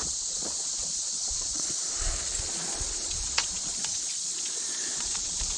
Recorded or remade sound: remade